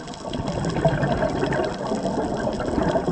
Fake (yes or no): no